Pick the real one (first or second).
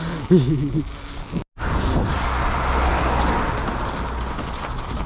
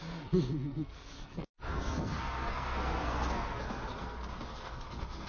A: first